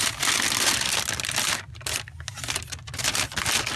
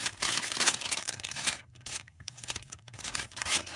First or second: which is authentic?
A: first